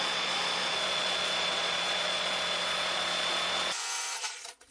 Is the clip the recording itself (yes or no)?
no